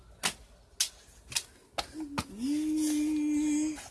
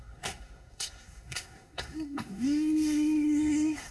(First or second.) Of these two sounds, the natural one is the first